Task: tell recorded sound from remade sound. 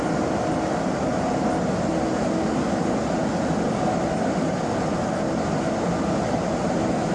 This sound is recorded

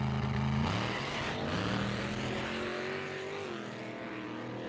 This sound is recorded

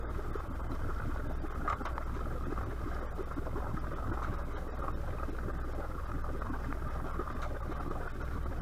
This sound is recorded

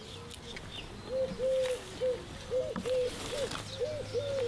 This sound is recorded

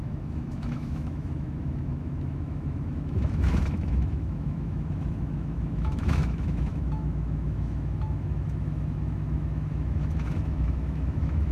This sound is remade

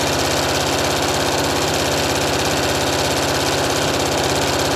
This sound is recorded